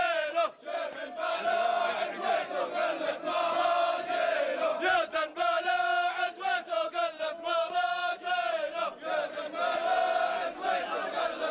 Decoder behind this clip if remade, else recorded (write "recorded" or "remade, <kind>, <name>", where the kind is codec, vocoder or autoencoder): recorded